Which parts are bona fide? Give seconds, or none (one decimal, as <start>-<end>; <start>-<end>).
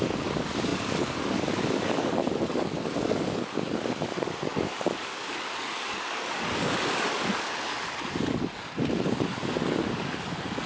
none